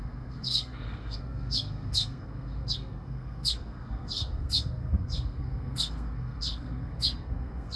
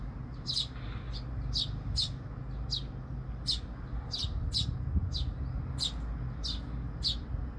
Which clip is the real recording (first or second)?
second